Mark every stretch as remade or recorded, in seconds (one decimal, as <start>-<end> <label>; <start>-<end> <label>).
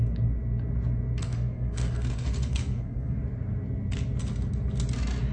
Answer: 0.0-1.2 recorded; 1.2-3.2 remade; 3.2-5.3 recorded